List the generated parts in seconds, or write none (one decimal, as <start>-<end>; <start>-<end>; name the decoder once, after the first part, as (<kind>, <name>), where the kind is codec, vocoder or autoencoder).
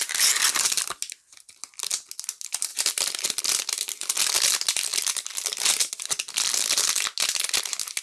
2.7-3.4 (vocoder, BigVGAN v2)